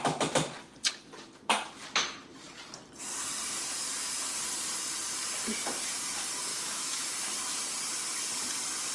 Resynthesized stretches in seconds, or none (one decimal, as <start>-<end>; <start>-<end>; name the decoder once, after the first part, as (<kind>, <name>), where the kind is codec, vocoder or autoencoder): 6.5-7.1 (autoencoder, DAC-VAE)